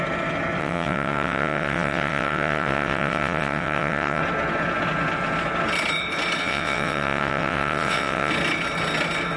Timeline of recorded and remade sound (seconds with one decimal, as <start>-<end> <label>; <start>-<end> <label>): 0.0-0.6 recorded; 0.6-4.2 remade; 4.2-6.4 recorded; 6.4-8.3 remade; 8.3-9.4 recorded